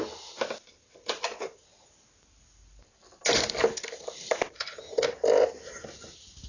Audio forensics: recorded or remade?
recorded